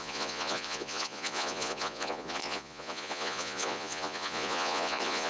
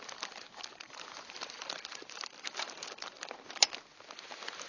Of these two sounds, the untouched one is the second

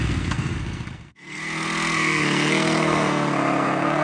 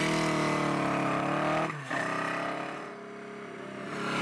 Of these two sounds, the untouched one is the second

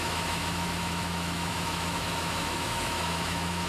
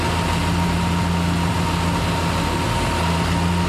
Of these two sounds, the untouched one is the second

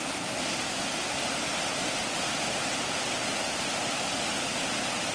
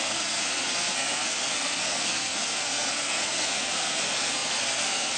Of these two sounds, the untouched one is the first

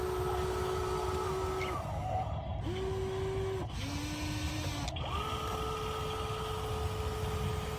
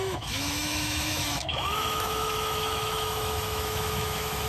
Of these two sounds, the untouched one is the first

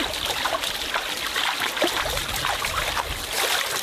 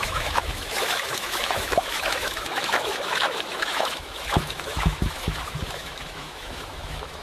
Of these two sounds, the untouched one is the first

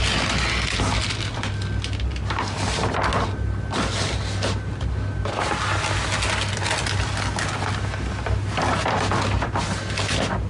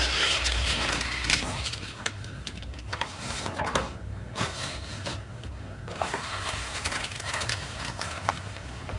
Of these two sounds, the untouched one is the first